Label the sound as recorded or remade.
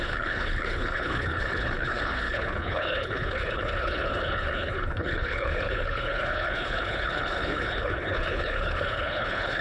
remade